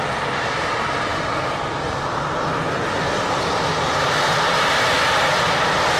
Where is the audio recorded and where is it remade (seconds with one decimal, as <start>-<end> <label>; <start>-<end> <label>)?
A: 0.0-6.0 recorded